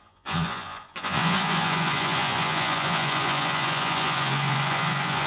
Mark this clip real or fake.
fake